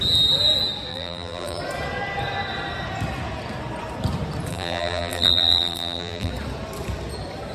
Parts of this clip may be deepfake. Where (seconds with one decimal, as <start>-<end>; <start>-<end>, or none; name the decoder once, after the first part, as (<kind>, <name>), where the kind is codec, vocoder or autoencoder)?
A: 0.9-1.6 (vocoder, BigVGAN v2); 4.5-6.3